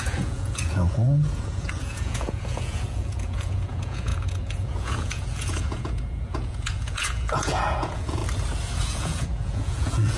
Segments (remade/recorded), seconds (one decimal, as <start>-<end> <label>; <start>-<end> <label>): 0.0-8.2 remade; 8.2-8.8 recorded; 8.8-10.2 remade